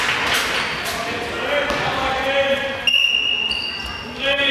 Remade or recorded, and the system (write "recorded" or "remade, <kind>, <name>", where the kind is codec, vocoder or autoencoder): recorded